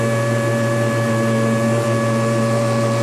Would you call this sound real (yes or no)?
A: yes